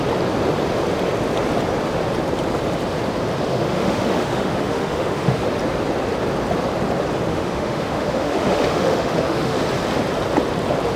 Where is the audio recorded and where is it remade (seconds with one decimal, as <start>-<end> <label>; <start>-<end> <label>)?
0.0-3.5 recorded; 3.5-5.4 remade; 5.4-7.3 recorded; 7.3-9.6 remade; 9.6-11.0 recorded

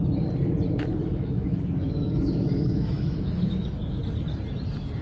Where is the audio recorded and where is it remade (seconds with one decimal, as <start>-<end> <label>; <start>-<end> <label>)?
0.0-1.0 recorded; 1.0-4.0 remade; 4.0-5.0 recorded

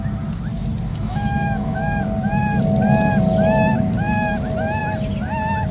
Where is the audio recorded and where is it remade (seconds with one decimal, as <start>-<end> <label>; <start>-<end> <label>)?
0.0-0.9 recorded; 0.9-2.0 remade; 2.0-5.7 recorded

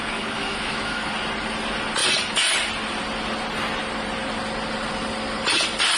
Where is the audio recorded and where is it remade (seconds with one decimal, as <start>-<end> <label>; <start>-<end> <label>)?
0.0-1.1 remade; 1.1-6.0 recorded

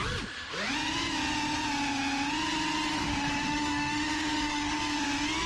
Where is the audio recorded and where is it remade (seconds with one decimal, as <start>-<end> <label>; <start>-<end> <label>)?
0.0-2.9 recorded; 2.9-4.8 remade; 4.8-5.5 recorded

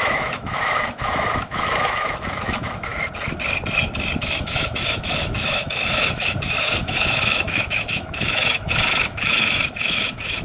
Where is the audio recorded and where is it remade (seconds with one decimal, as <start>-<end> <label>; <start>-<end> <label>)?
0.0-2.9 remade; 2.9-4.2 recorded; 4.2-10.4 remade

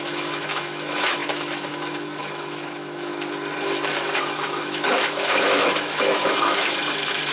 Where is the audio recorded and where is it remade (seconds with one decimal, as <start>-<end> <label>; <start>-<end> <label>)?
0.0-3.1 remade; 3.1-4.0 recorded; 4.0-7.3 remade

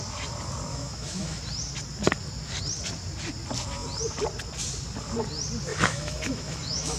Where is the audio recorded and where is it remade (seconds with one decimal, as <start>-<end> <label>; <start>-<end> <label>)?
0.0-0.7 recorded; 0.7-1.4 remade; 1.4-5.7 recorded; 5.7-7.0 remade